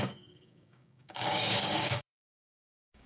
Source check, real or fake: fake